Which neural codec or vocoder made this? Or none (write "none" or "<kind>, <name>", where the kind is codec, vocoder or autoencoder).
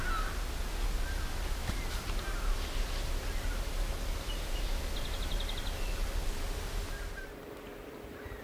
none